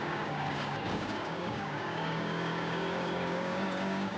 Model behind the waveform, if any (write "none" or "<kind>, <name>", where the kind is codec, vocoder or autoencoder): codec, DAC